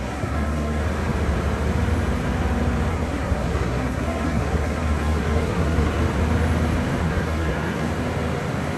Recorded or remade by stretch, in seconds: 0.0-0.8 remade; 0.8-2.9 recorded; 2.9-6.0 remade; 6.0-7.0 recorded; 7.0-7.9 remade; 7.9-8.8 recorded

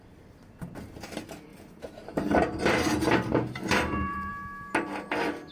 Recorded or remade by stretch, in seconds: 0.0-1.5 recorded; 1.5-4.3 remade; 4.3-5.5 recorded

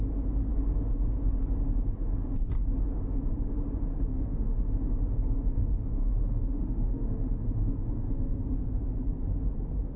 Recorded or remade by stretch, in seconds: 0.0-4.1 recorded; 4.1-4.7 remade; 4.7-5.5 recorded; 5.5-8.8 remade; 8.8-10.0 recorded

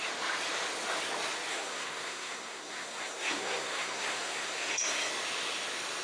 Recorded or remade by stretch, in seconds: 0.0-1.5 recorded; 1.5-5.1 remade; 5.1-6.0 recorded